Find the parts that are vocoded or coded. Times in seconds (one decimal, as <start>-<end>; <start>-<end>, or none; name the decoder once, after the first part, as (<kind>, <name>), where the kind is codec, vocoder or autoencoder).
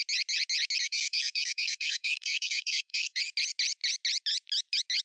0.8-3.2 (codec, SNAC)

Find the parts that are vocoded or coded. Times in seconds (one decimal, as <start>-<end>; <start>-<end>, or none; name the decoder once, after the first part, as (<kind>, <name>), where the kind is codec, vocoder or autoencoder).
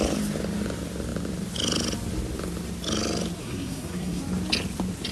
3.4-4.2 (codec, SNAC)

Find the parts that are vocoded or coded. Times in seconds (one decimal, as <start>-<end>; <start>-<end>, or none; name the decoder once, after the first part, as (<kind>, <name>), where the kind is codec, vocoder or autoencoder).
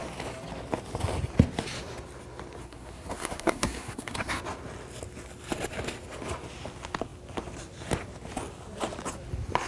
2.6-4.4 (codec, SNAC)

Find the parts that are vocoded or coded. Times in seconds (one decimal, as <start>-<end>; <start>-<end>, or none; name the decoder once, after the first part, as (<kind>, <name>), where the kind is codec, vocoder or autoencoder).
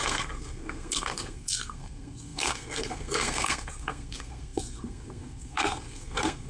0.0-6.5 (codec, SNAC)